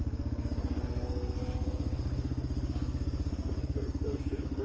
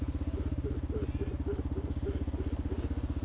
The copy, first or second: first